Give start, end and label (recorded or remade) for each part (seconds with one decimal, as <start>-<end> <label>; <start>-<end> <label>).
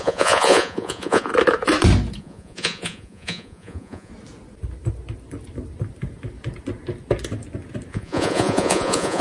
0.0-1.3 remade; 1.3-2.2 recorded; 2.2-4.1 remade; 4.1-7.9 recorded; 7.9-9.2 remade